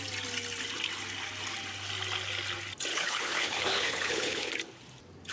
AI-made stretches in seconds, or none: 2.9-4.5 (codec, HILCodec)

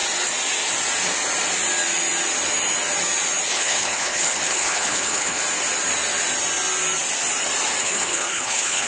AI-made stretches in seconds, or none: 3.5-5.4 (codec, HILCodec); 7.8-8.9